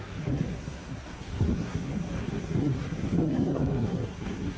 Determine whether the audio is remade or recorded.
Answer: remade